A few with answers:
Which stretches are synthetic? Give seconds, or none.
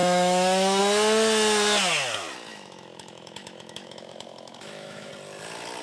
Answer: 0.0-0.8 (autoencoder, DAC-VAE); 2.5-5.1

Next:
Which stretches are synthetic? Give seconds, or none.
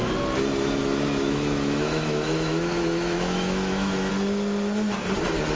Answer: 0.8-4.1 (autoencoder, DAC-VAE)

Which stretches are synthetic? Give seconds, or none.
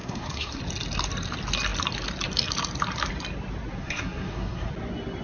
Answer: 0.0-0.6 (codec, SNAC); 3.8-4.7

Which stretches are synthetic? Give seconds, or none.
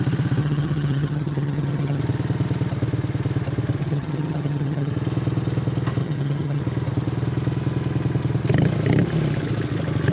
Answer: 0.4-2.0 (vocoder, HiFi-GAN); 3.8-4.9; 6.0-6.6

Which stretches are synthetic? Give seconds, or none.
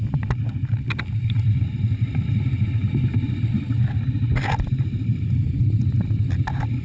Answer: none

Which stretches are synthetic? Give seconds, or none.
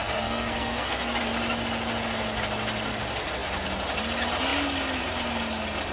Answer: 0.0-1.2 (codec, SNAC)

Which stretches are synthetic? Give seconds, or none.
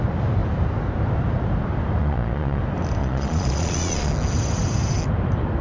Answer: 2.0-2.6 (vocoder, Vocos); 3.0-4.1